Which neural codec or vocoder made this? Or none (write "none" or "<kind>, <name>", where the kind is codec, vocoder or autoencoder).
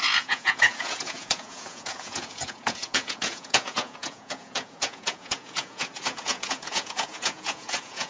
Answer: vocoder, Vocos